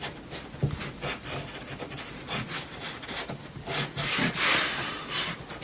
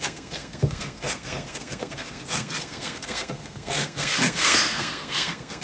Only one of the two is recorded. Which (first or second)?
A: first